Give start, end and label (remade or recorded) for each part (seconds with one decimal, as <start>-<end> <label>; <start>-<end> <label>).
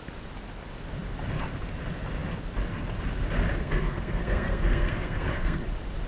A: 0.0-3.6 recorded; 3.6-5.6 remade; 5.6-6.1 recorded